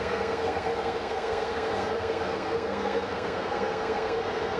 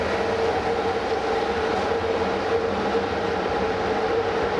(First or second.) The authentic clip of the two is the second